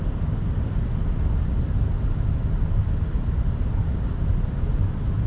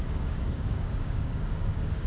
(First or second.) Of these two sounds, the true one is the first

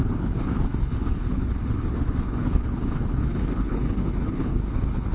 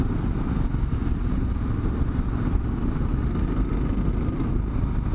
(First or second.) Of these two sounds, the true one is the second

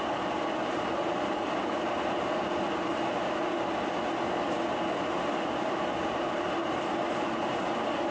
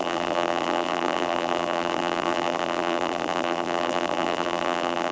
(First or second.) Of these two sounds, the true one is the first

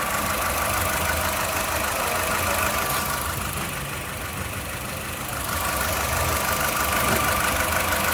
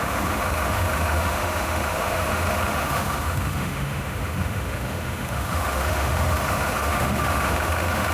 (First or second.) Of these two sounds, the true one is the first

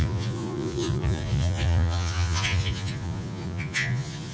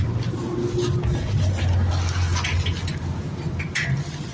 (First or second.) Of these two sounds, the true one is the second